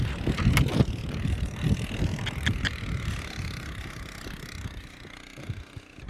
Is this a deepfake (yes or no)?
no